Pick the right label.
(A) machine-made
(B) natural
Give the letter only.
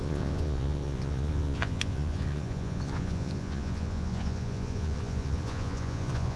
A